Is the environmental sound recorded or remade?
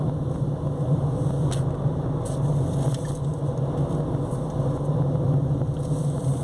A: recorded